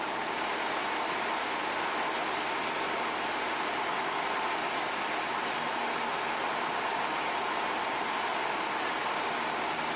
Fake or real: real